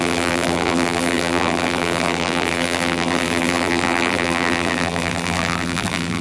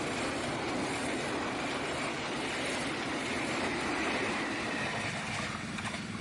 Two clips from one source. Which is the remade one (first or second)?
first